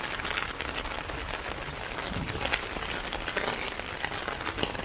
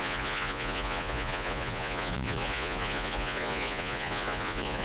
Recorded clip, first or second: first